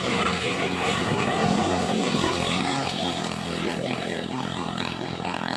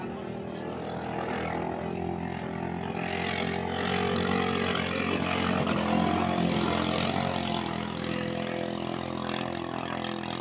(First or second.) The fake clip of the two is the first